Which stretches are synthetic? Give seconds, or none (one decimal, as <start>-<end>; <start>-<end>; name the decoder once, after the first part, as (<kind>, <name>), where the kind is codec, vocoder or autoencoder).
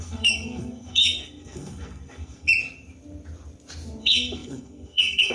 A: 0.0-2.5 (codec, SNAC); 4.0-5.3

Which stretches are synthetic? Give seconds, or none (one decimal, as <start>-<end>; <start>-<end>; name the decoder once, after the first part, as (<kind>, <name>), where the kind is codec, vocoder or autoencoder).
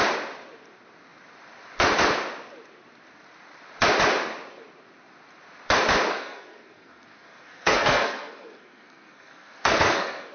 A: 6.1-10.3 (codec, SNAC)